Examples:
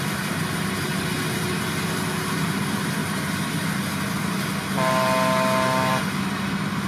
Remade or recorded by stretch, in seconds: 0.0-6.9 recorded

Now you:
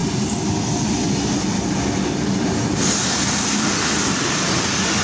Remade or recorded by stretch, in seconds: 0.0-5.0 recorded

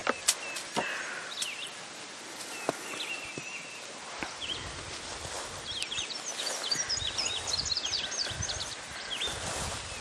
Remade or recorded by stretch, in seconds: 0.0-10.0 recorded

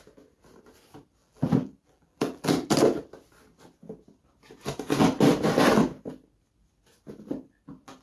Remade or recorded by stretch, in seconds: 0.0-1.2 recorded; 1.2-2.7 remade; 2.7-8.0 recorded